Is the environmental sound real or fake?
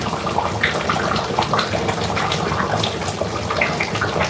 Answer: real